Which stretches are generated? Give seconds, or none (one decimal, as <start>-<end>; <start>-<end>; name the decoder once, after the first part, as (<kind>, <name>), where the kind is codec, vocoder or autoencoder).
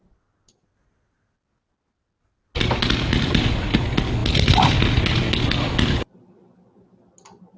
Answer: none